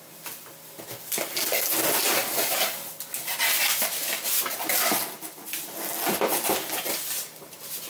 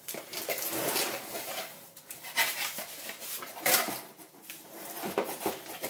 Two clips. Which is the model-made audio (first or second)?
second